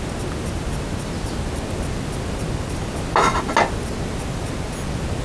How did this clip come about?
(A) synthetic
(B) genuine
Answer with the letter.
B